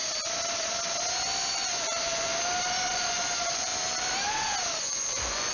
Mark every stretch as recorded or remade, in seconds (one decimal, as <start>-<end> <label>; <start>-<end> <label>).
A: 0.0-1.5 recorded; 1.5-2.3 remade; 2.3-2.9 recorded; 2.9-3.7 remade; 3.7-4.8 recorded; 4.8-5.5 remade